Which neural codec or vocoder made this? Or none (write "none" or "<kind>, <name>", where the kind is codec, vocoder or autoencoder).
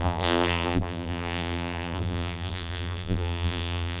vocoder, BigVGAN v2